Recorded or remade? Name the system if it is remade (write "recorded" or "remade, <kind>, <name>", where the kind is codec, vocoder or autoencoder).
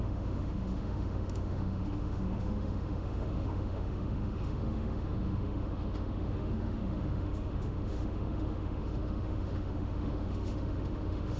remade, autoencoder, DAC-VAE